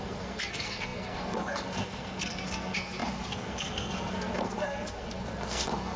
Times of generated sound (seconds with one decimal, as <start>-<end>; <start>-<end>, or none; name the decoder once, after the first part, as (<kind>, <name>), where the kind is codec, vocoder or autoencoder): 0.0-6.0 (codec, SNAC)